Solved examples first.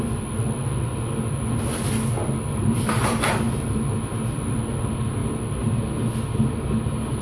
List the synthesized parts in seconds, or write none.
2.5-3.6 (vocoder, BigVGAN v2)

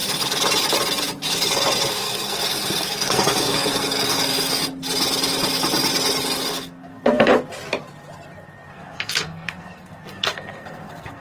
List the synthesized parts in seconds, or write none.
1.9-4.6 (codec, SNAC); 6.5-7.3; 8.7-11.2

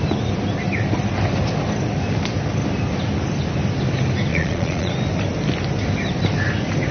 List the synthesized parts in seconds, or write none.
4.3-4.9 (vocoder, Vocos)

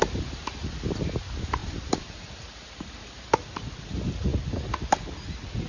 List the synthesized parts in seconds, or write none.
0.0-0.8 (vocoder, BigVGAN v2); 1.6-3.9

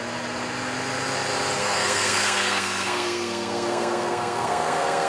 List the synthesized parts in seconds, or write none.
1.6-5.1 (codec, SNAC)